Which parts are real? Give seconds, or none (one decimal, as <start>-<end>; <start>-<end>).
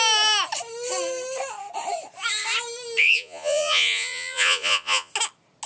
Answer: 0.0-3.0; 5.1-5.7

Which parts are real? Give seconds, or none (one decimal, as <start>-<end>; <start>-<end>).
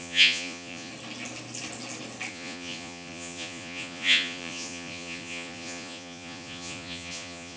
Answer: 0.9-2.3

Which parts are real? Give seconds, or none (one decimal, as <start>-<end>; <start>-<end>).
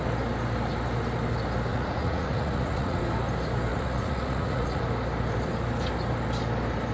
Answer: 0.0-1.7; 3.0-3.7; 4.8-6.9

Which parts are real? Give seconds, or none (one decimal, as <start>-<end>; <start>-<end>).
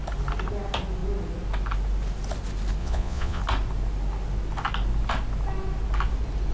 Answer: 0.0-2.8; 3.4-6.5